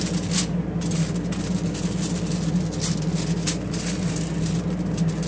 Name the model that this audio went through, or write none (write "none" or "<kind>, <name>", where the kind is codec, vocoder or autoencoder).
none